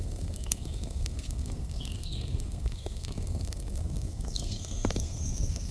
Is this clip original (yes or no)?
no